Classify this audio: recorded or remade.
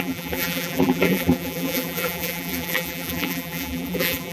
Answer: remade